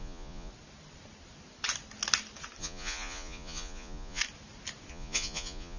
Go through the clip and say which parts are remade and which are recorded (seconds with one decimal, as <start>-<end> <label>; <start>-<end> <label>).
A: 0.0-0.5 remade; 0.5-2.6 recorded; 2.6-4.2 remade; 4.2-4.9 recorded; 4.9-5.8 remade